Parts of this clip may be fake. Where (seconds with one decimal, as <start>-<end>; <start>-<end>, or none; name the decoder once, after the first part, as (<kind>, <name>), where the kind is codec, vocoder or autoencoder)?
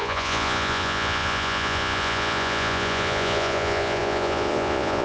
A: 0.0-5.0 (vocoder, Vocos)